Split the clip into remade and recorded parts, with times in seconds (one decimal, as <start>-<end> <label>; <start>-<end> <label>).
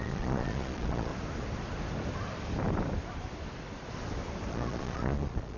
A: 0.0-1.1 remade; 1.1-4.5 recorded; 4.5-5.6 remade